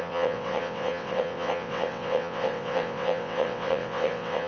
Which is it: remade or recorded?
remade